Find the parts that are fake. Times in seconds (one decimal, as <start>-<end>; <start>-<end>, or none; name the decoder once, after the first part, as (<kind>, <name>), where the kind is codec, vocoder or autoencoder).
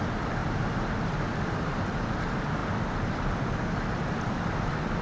0.0-0.4 (vocoder, BigVGAN v2); 1.3-5.0